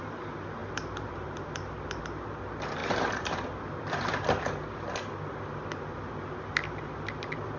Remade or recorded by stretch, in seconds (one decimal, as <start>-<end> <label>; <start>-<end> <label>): 0.0-0.6 recorded; 0.6-2.0 remade; 2.0-2.8 recorded; 2.8-4.4 remade; 4.4-7.6 recorded